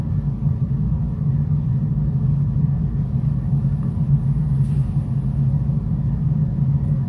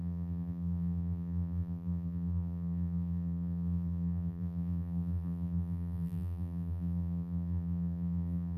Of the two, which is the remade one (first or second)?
second